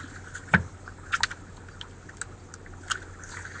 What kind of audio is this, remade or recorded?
recorded